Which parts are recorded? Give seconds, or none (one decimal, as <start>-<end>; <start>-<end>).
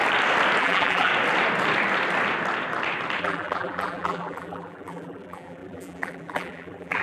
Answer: 0.0-0.6; 1.1-3.2